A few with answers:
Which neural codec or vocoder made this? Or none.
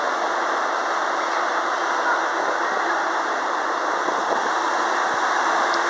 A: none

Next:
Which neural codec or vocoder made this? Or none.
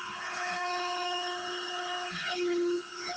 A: codec, HILCodec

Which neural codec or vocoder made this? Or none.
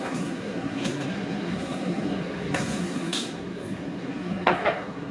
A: codec, SNAC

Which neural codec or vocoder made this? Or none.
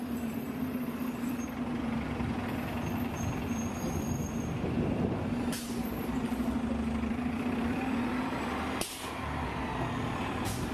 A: vocoder, BigVGAN v2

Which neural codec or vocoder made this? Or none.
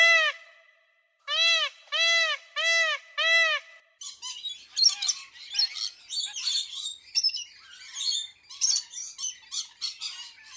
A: none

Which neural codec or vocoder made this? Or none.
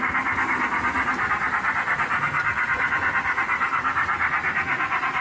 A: none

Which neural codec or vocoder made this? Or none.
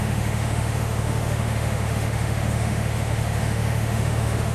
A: autoencoder, DAC-VAE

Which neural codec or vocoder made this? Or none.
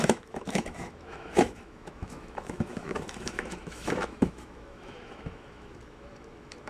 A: autoencoder, DAC-VAE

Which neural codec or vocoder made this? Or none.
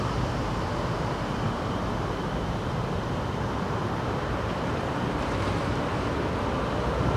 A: vocoder, BigVGAN v2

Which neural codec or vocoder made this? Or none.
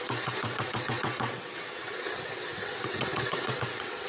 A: vocoder, WaveNeXt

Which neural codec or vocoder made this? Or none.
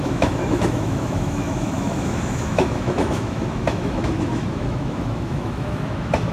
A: autoencoder, DAC-VAE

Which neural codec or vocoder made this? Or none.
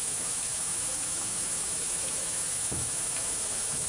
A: autoencoder, DAC-VAE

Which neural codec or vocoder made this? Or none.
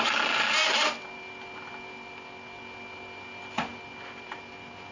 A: none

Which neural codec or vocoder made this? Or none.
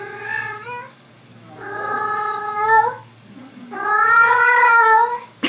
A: codec, DAC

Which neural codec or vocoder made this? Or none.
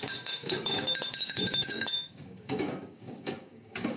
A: codec, DAC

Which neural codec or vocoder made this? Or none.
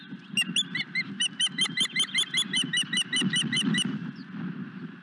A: none